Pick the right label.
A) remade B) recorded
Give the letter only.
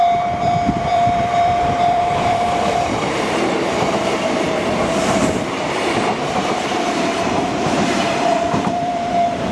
A